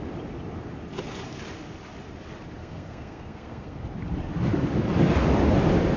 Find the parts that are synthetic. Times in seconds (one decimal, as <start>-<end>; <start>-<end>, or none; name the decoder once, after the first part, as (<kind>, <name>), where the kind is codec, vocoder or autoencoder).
2.6-3.8 (codec, SNAC)